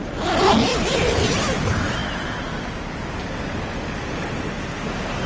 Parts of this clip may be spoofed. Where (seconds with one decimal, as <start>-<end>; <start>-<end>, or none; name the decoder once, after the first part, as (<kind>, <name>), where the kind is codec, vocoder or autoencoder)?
0.7-1.3 (vocoder, BigVGAN v2)